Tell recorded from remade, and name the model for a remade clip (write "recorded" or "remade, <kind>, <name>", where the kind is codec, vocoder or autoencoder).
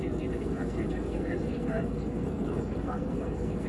remade, codec, SNAC